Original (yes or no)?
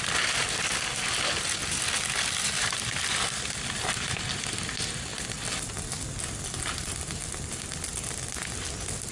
yes